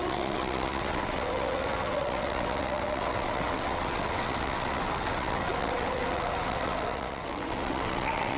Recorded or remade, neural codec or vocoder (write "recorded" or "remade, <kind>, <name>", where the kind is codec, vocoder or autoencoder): remade, vocoder, WaveNeXt